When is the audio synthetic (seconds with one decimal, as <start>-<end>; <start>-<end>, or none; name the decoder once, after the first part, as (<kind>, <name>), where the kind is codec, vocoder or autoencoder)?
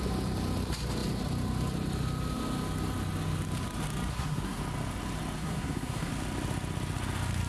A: 4.1-4.6 (codec, SNAC); 5.4-6.1